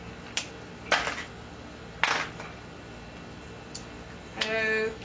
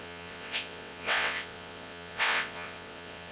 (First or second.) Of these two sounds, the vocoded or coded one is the second